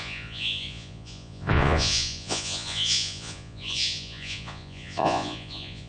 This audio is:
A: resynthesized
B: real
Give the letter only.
A